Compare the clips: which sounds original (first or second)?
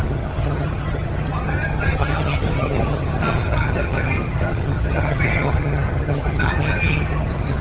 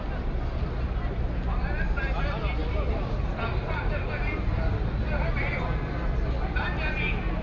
second